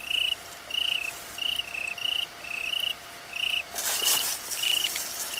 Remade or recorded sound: recorded